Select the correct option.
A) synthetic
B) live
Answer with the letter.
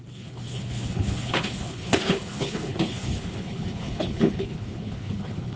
A